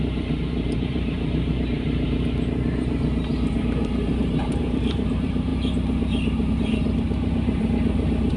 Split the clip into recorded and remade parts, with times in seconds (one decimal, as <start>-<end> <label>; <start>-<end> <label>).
0.0-5.5 remade; 5.5-6.5 recorded; 6.5-8.4 remade